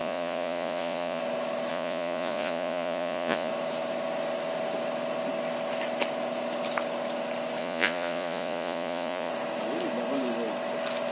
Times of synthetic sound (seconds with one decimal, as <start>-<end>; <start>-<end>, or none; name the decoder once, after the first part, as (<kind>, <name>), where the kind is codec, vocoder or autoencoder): 0.0-1.2 (vocoder, Vocos); 1.7-3.5; 7.6-9.3